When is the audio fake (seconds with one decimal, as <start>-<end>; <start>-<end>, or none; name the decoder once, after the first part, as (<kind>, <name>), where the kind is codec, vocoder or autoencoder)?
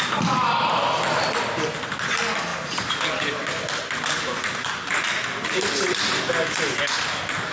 none